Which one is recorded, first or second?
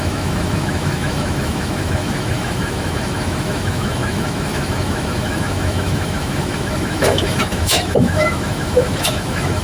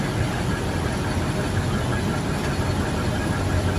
second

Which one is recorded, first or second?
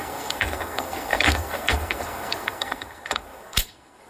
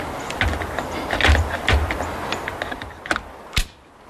second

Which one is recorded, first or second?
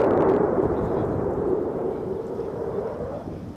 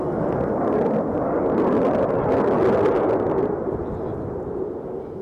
second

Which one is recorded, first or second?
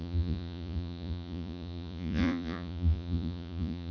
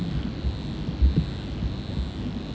second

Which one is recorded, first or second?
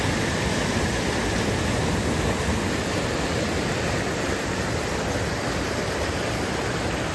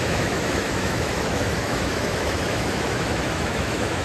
first